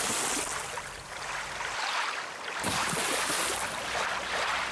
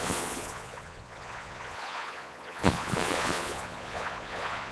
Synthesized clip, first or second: second